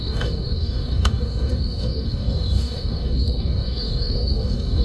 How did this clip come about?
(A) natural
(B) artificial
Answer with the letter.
B